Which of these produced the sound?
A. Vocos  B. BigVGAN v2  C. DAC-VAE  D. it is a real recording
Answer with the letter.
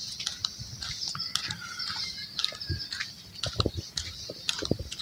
D